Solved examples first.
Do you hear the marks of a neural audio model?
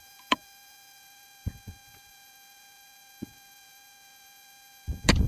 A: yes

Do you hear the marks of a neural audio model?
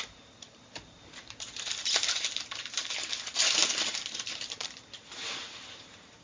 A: yes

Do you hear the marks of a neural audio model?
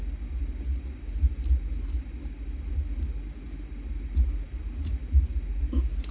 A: no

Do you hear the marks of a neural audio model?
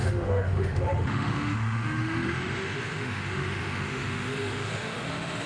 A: yes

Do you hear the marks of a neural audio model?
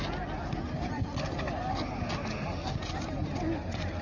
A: no